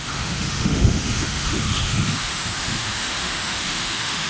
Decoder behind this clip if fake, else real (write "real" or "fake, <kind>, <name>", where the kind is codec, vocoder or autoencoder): fake, autoencoder, DAC-VAE